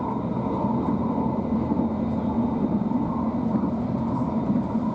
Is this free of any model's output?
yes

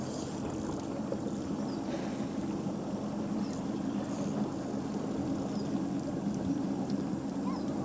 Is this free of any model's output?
yes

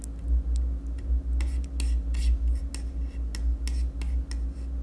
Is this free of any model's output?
yes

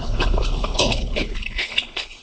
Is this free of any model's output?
no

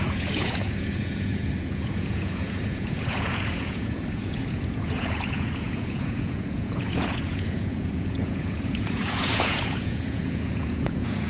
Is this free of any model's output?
no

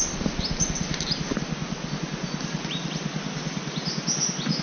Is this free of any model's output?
yes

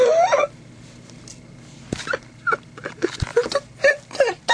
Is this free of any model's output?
yes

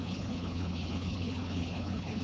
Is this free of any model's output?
no